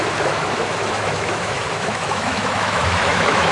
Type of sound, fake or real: fake